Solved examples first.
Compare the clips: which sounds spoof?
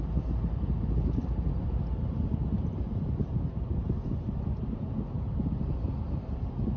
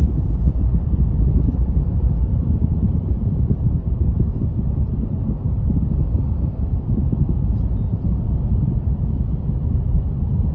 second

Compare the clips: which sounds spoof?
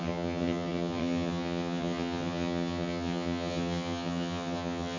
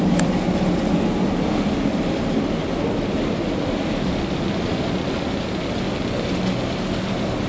first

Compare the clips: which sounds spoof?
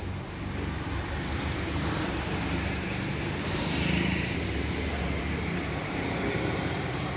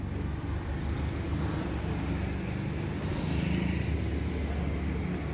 first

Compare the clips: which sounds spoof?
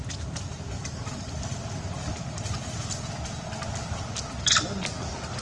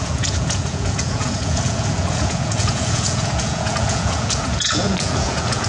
second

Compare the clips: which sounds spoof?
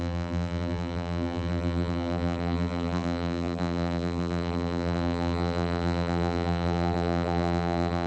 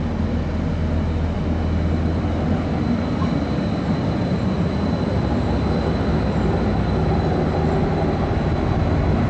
first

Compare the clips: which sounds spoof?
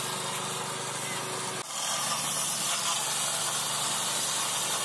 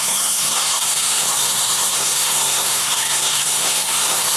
second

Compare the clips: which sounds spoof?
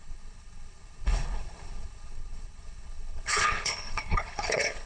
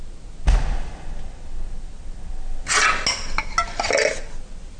first